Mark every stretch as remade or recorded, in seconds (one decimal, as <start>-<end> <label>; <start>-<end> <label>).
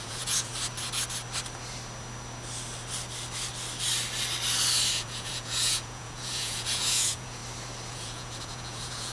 0.0-0.5 remade; 0.5-4.9 recorded; 4.9-7.4 remade; 7.4-7.9 recorded; 7.9-9.1 remade